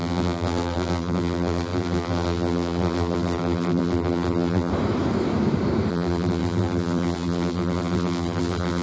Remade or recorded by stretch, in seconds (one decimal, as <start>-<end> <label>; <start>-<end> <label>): 0.0-4.7 remade; 4.7-5.9 recorded; 5.9-8.8 remade